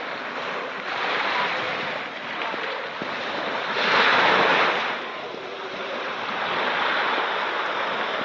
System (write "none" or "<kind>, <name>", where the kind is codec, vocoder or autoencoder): none